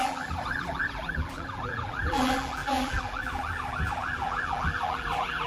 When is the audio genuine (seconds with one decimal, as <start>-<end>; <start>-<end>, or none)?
none